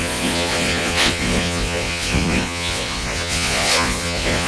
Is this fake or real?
fake